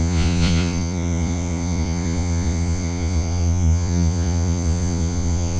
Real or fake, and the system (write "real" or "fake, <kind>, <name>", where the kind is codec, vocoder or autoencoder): fake, vocoder, Vocos